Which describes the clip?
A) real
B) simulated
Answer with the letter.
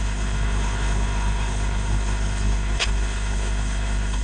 B